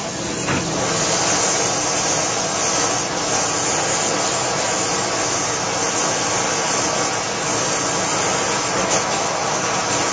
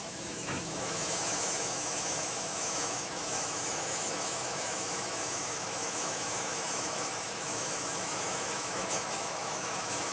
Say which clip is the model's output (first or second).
second